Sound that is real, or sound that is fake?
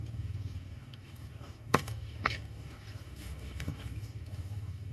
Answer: fake